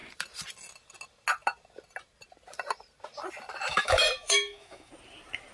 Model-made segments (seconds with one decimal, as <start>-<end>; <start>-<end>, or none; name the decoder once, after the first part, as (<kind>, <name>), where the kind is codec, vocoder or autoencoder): 3.7-4.9 (autoencoder, DAC-VAE)